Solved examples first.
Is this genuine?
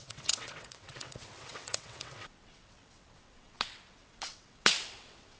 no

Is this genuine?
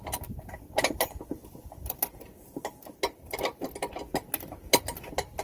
yes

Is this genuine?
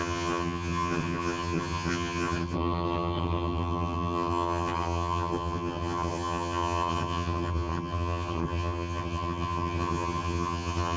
no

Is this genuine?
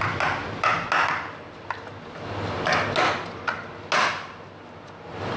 yes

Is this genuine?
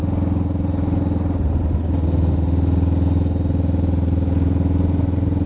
yes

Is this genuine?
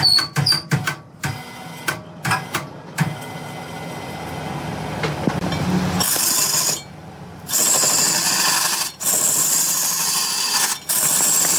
yes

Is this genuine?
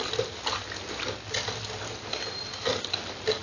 yes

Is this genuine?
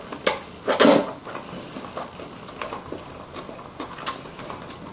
yes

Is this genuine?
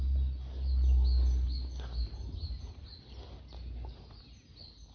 yes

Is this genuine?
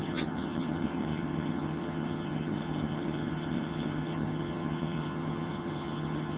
no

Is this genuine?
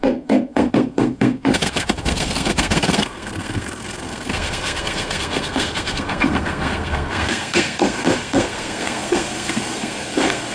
no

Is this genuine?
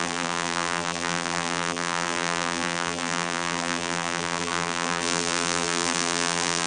no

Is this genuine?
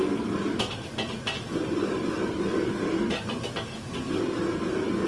yes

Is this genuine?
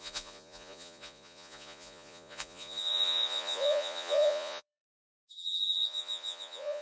no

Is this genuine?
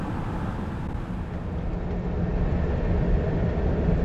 yes